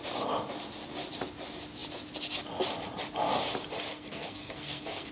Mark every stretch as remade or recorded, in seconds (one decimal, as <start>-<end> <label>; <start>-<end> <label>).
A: 0.0-3.9 recorded; 3.9-5.1 remade